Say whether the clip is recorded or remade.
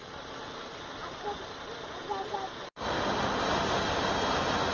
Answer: recorded